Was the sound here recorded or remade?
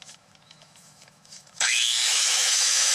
remade